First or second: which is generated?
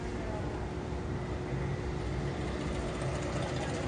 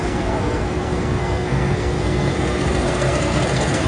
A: second